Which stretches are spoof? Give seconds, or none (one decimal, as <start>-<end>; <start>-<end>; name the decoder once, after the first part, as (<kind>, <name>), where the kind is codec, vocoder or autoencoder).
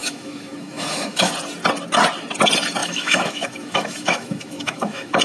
0.0-1.3 (autoencoder, DAC-VAE); 2.8-5.2